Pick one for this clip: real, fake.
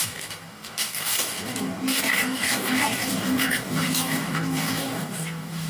fake